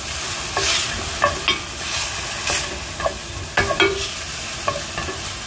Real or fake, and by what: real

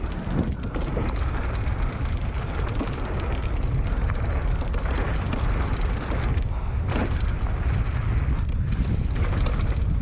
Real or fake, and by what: real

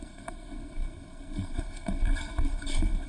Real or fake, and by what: fake, codec, SNAC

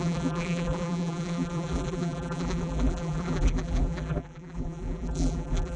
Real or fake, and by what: fake, vocoder, BigVGAN v2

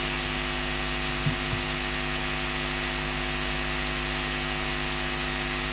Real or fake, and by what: real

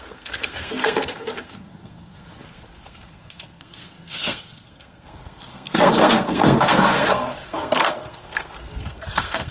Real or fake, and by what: fake, codec, SNAC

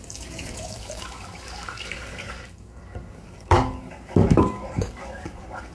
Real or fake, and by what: fake, codec, DAC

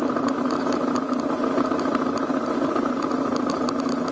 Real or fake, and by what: real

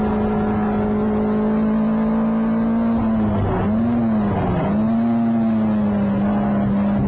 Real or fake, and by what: real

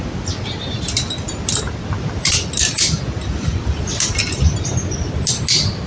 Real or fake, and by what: real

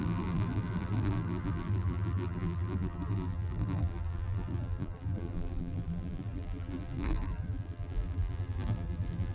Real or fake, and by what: fake, vocoder, BigVGAN v2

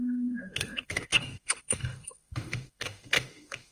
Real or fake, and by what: fake, autoencoder, DAC-VAE